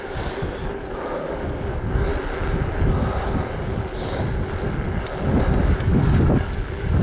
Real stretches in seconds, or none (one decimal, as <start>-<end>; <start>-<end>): 0.6-1.3; 2.1-5.6